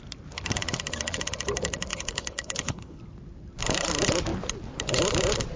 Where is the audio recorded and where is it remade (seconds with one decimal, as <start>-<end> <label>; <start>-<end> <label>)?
0.0-1.9 recorded; 1.9-3.0 remade; 3.0-5.6 recorded